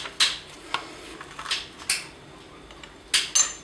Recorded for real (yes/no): yes